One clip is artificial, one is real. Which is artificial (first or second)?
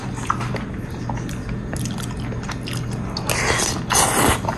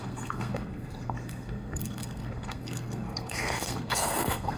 second